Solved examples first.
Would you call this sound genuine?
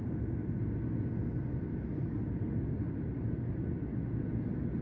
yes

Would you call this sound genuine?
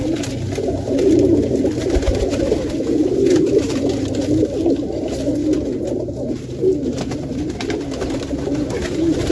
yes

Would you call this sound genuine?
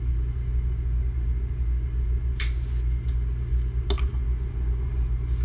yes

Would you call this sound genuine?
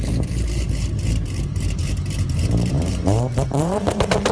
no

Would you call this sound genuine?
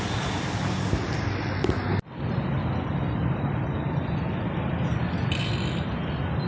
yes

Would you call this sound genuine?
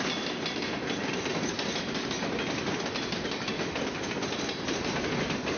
yes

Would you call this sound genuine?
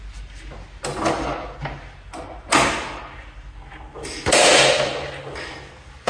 yes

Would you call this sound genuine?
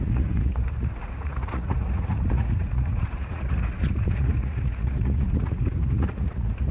no